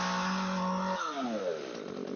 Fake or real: real